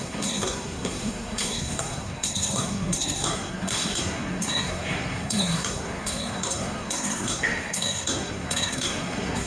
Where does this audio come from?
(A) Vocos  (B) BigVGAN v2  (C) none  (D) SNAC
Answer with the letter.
D